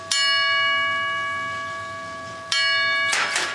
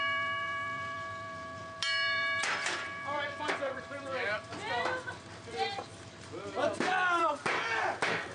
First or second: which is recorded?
first